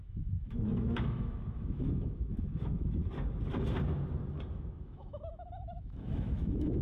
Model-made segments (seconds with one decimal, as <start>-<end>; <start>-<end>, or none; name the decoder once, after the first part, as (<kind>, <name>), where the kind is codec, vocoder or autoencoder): 0.0-3.0 (autoencoder, DAC-VAE); 4.5-6.8